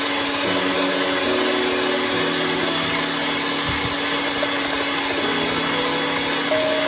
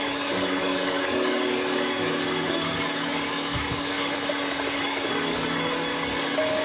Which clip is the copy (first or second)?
second